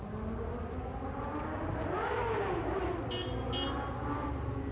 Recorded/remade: recorded